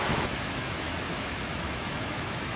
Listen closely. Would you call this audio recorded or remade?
remade